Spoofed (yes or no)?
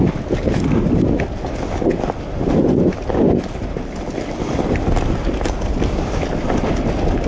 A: no